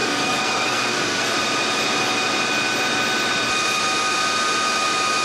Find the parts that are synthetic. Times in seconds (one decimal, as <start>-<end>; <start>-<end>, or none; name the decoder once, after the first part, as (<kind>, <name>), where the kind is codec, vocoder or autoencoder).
0.0-1.3 (codec, SNAC)